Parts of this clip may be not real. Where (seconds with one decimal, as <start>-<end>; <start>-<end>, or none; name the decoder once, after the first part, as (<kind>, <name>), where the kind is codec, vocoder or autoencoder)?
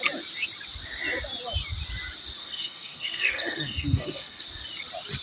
2.4-4.4 (codec, SNAC)